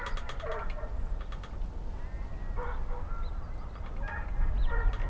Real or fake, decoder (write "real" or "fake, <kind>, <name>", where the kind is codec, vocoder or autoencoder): real